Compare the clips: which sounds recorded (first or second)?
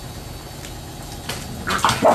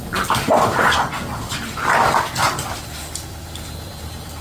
first